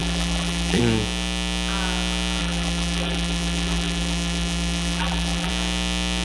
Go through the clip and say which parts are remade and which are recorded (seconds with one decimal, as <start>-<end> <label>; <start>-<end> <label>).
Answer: 0.0-0.8 remade; 0.8-2.4 recorded; 2.4-5.5 remade; 5.5-6.2 recorded